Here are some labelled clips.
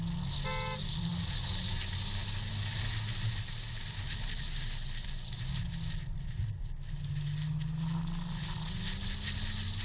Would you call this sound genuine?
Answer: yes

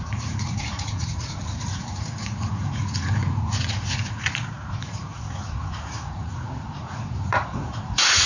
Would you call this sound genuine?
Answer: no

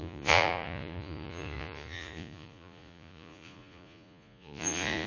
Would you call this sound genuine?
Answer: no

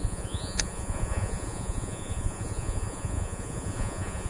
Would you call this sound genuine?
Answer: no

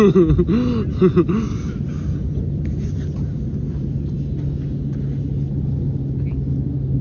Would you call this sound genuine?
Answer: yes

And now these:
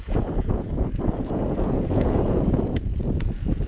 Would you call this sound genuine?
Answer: no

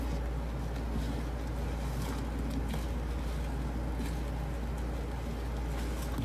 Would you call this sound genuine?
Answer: yes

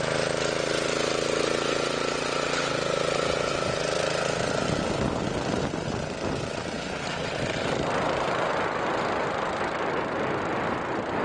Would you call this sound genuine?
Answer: yes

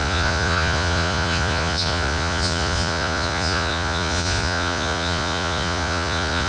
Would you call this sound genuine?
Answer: no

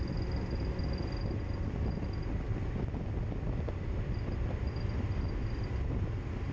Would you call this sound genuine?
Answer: yes